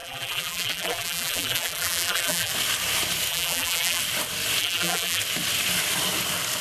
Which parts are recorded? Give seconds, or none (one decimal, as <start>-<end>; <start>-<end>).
2.5-3.3; 4.0-4.6; 5.2-6.6